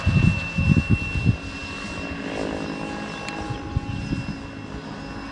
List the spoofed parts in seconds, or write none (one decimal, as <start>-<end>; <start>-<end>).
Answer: none